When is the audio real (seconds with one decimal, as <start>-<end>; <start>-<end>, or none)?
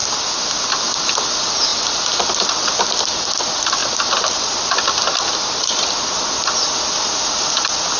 0.0-8.0